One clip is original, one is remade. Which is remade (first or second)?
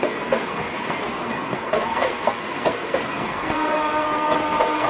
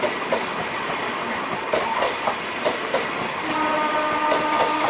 first